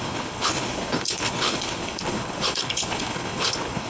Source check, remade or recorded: remade